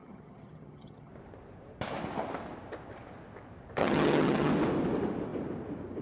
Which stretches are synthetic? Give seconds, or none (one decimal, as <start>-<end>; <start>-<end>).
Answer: 0.0-1.1; 3.8-4.5